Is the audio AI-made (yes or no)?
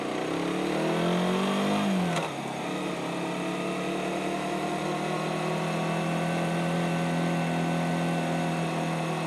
no